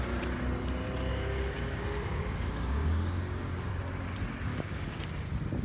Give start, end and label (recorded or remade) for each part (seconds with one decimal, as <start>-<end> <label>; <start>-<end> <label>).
0.0-1.1 recorded; 1.1-3.7 remade; 3.7-4.5 recorded; 4.5-5.0 remade; 5.0-5.6 recorded